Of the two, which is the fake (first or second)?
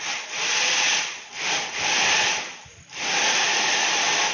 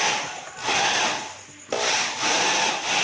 first